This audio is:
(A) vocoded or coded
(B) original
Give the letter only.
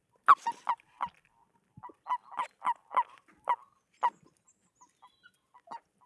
B